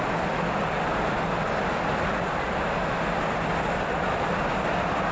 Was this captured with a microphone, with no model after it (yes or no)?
yes